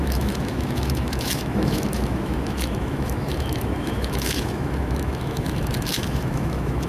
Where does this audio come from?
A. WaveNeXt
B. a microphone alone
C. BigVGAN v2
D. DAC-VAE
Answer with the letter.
D